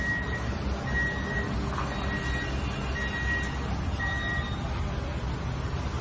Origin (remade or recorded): recorded